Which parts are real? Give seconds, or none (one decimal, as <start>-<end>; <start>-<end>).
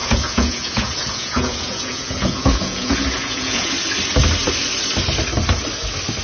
3.7-6.2